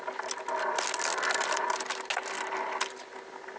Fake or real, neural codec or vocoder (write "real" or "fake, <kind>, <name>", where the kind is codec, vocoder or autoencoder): real